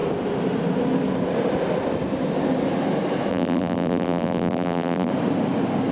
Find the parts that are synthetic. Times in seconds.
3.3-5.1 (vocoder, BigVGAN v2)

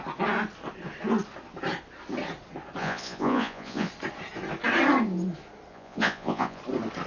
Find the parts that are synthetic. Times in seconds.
2.8-3.9 (vocoder, Vocos); 5.7-6.6

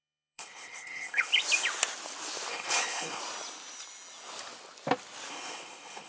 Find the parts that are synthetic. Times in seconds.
0.0-1.3 (codec, HILCodec); 2.5-3.2; 5.3-6.1

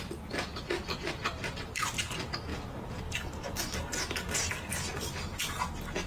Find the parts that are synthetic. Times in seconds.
none

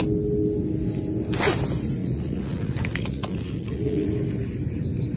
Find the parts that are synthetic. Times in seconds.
2.0-4.1 (vocoder, Vocos)

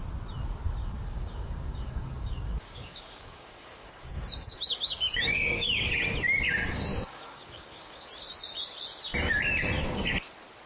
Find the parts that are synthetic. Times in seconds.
0.8-5.9 (codec, DAC); 6.9-8.0

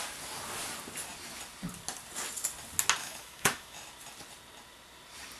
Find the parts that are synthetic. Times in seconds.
3.0-3.8 (autoencoder, DAC-VAE)